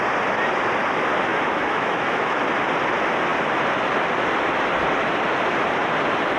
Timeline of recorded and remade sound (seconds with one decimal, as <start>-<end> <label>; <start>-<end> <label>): 0.0-1.3 recorded; 1.3-2.4 remade; 2.4-6.4 recorded

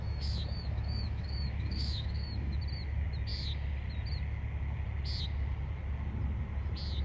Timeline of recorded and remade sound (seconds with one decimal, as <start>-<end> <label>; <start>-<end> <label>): 0.0-2.6 remade; 2.6-7.0 recorded